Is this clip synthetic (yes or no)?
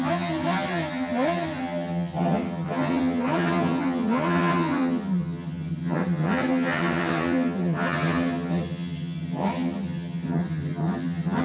yes